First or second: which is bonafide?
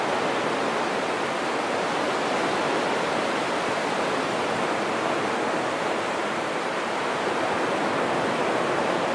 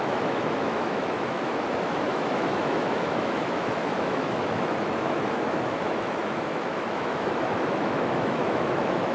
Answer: first